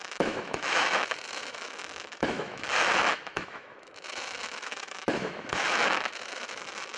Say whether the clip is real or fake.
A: fake